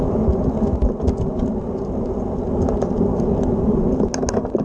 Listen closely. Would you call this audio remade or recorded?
recorded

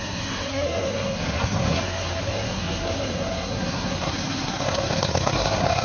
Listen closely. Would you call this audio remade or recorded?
remade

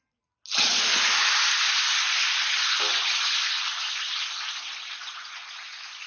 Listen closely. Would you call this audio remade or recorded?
recorded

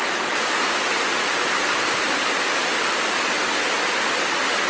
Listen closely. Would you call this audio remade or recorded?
recorded